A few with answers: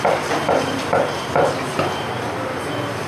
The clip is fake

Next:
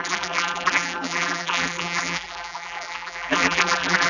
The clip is fake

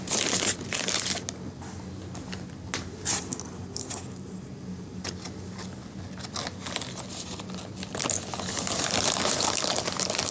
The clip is real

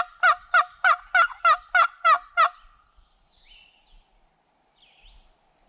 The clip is real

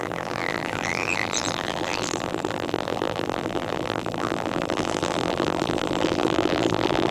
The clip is fake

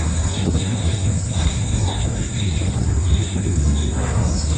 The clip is fake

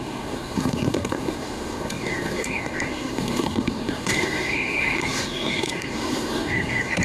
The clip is fake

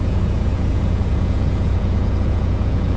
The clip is fake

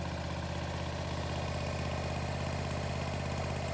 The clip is real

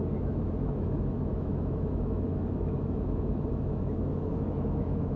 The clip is fake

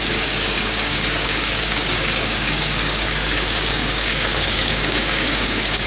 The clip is fake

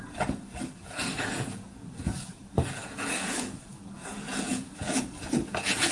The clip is fake